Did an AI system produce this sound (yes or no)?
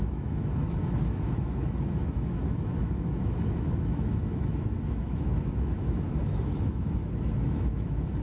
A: yes